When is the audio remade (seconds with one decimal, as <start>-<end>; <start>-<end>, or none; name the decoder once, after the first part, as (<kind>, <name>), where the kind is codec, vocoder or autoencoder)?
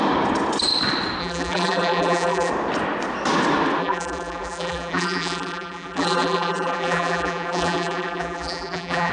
1.2-2.5 (vocoder, BigVGAN v2); 3.8-9.1